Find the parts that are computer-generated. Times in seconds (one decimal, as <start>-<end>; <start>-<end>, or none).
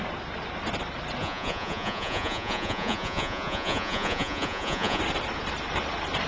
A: 1.2-5.0